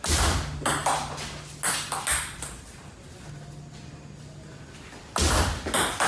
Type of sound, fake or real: real